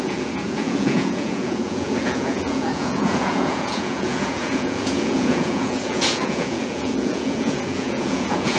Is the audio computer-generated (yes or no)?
yes